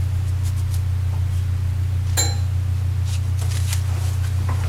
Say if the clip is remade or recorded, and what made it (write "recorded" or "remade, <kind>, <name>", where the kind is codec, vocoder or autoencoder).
recorded